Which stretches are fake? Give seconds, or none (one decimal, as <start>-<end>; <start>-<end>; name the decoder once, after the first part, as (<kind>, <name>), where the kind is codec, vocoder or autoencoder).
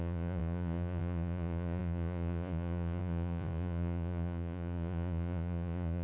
0.0-6.0 (vocoder, Vocos)